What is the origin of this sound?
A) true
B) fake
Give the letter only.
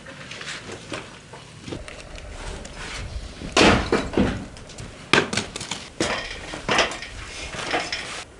A